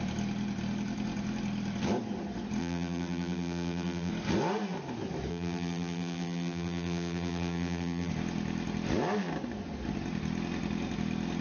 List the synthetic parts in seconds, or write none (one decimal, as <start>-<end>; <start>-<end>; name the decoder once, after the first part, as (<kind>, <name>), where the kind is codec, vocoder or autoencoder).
2.6-4.1 (vocoder, BigVGAN v2); 5.3-8.1